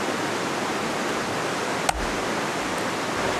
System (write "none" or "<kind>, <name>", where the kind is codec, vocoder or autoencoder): none